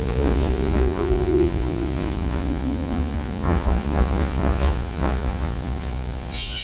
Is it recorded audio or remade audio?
remade